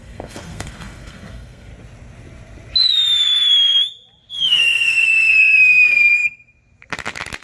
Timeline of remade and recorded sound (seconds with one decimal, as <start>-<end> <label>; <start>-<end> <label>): 0.0-1.7 remade; 1.7-4.3 recorded; 4.3-6.1 remade; 6.1-7.4 recorded